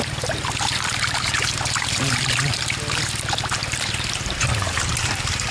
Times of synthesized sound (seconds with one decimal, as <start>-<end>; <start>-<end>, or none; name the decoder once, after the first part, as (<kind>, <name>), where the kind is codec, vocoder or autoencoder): 0.0-5.5 (vocoder, BigVGAN v2)